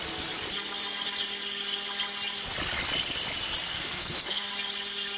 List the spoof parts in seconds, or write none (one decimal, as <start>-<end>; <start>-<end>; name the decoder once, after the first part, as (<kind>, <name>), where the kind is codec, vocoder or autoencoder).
3.7-4.5 (codec, SNAC)